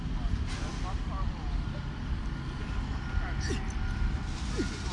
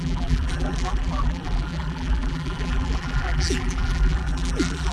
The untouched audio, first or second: first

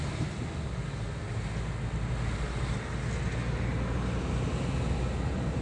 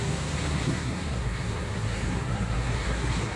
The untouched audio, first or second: first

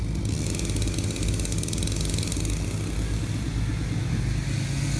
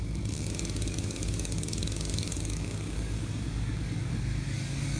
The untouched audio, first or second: first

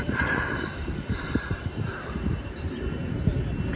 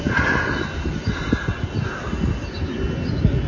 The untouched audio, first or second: second